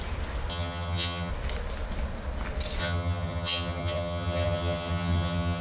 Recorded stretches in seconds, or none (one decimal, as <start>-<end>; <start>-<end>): 0.0-0.5; 1.3-2.8